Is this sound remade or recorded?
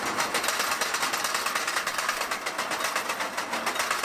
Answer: recorded